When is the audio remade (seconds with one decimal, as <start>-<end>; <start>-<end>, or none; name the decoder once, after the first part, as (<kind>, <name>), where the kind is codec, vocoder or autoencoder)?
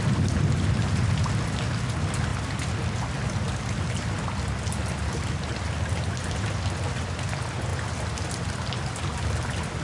none